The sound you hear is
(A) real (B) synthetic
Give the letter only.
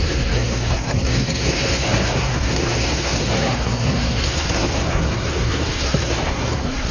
B